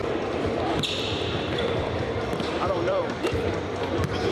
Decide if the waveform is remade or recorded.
remade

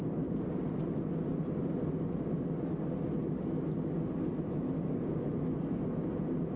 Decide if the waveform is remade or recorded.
recorded